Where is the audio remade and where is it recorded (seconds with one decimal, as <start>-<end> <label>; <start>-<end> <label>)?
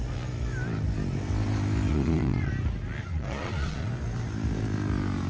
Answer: 0.0-1.9 recorded; 1.9-2.5 remade; 2.5-3.1 recorded; 3.1-3.9 remade; 3.9-5.3 recorded